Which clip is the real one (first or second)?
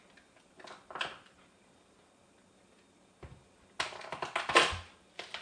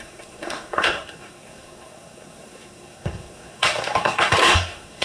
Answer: first